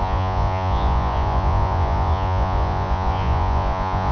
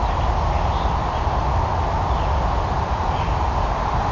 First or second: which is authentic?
second